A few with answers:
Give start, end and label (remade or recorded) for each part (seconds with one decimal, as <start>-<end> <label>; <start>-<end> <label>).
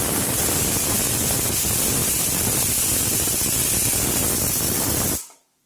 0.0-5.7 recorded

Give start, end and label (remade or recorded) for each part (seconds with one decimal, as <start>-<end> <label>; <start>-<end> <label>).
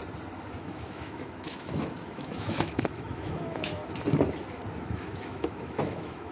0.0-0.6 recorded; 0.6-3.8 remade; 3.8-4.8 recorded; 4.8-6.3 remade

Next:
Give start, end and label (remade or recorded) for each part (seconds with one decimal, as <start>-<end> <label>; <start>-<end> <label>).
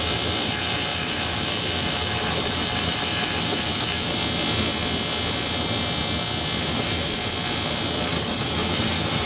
0.0-4.2 remade; 4.2-6.7 recorded; 6.7-7.2 remade; 7.2-8.4 recorded; 8.4-9.3 remade